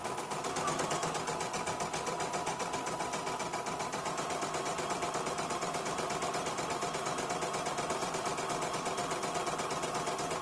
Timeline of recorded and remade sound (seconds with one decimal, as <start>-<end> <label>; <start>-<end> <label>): 0.0-9.0 remade; 9.0-10.4 recorded